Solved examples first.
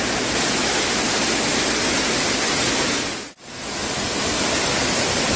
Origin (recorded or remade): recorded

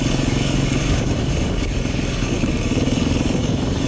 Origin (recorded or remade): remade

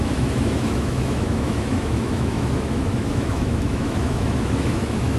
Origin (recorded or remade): remade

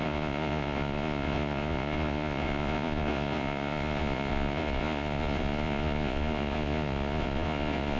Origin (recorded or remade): remade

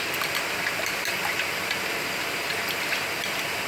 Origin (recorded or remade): recorded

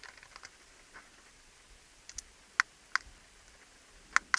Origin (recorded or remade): recorded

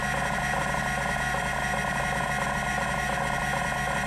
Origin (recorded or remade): recorded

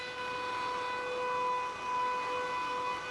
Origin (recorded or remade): recorded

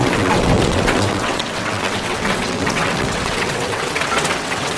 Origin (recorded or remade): remade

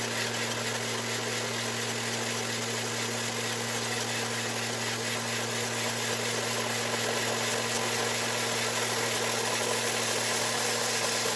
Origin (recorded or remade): recorded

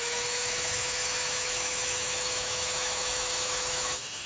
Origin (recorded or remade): remade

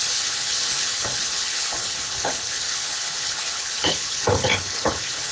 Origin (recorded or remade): remade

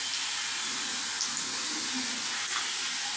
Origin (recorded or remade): recorded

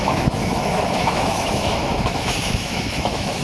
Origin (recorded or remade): remade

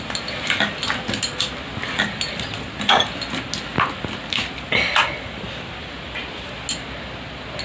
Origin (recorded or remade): recorded